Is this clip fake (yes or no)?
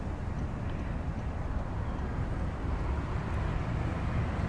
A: no